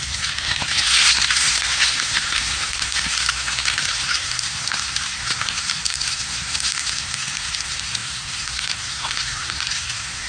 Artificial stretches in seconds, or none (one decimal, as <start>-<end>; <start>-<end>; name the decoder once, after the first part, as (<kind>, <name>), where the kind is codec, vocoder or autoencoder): 0.0-10.3 (codec, SNAC)